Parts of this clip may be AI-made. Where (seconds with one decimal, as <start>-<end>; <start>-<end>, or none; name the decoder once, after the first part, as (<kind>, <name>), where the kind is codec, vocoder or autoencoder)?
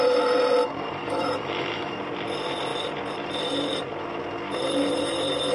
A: 0.9-1.9 (autoencoder, DAC-VAE)